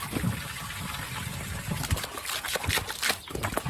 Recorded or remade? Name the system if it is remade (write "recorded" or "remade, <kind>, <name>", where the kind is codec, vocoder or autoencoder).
recorded